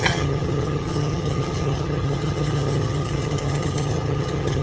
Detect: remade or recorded remade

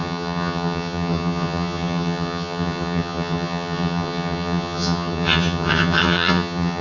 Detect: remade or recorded remade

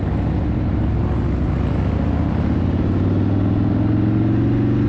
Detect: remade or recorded recorded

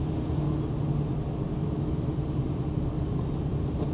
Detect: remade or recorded recorded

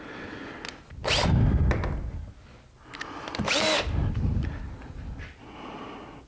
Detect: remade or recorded recorded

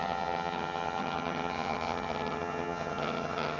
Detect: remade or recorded remade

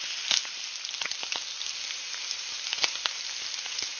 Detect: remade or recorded recorded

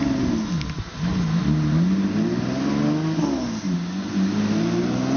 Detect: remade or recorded recorded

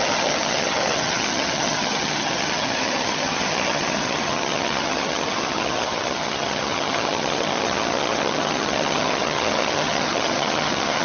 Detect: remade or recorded remade